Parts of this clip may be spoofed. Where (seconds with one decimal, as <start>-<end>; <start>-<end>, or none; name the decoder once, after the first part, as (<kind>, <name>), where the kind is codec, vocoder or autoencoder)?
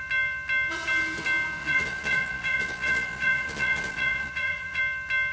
1.6-4.8 (vocoder, Vocos)